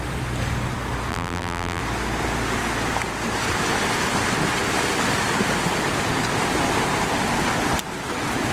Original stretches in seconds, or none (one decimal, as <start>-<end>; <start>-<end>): 0.0-1.1; 1.8-8.5